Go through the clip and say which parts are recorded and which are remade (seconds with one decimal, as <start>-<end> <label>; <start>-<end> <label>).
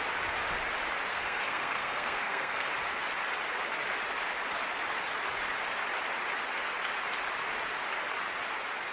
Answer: 0.0-1.1 recorded; 1.1-2.7 remade; 2.7-8.9 recorded